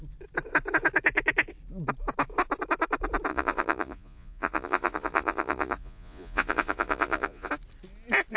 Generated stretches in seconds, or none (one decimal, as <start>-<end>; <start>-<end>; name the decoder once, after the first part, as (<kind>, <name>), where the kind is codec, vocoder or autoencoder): 3.3-7.5 (vocoder, Vocos)